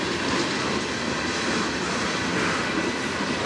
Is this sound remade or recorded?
recorded